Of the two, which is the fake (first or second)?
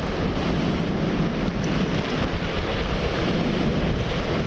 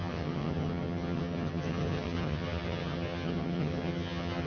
second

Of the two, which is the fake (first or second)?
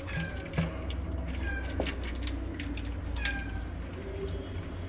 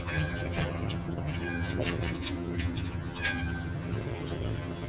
second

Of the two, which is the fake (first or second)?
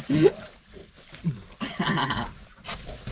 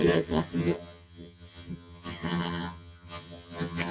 second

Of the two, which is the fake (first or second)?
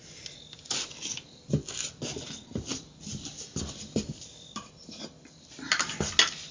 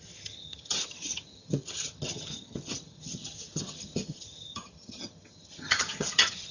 second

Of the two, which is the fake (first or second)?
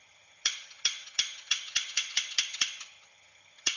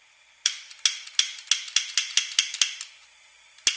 first